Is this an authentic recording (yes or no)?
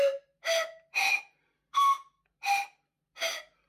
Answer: yes